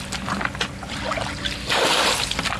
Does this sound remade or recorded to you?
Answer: recorded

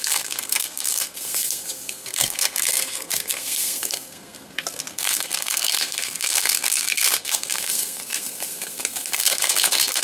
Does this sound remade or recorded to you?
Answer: remade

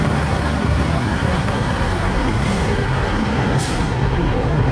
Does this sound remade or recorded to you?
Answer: remade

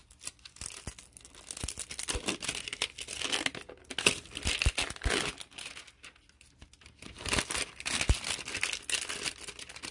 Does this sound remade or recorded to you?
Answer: recorded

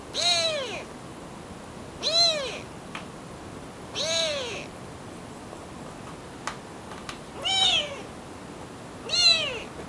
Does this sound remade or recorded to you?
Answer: recorded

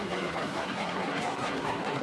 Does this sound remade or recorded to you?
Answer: remade